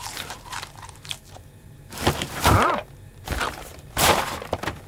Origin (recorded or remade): remade